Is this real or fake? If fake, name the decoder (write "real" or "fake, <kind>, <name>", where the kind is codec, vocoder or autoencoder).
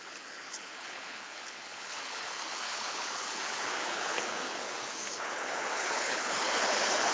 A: fake, codec, HILCodec